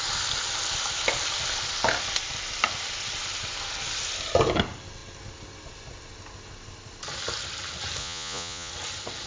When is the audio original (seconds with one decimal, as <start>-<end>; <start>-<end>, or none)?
0.0-8.0; 8.7-9.3